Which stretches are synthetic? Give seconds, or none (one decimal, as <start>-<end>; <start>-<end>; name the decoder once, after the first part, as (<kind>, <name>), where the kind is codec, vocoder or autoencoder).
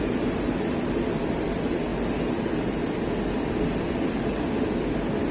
0.0-1.9 (vocoder, BigVGAN v2); 4.2-5.3